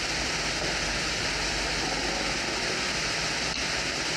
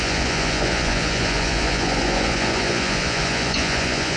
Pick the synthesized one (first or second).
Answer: second